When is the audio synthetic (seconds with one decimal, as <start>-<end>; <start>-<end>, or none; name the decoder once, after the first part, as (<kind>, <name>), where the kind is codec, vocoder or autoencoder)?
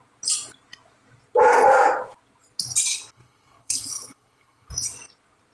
2.9-4.7 (codec, HILCodec)